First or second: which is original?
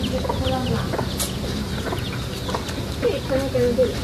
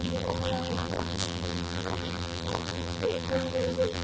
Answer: first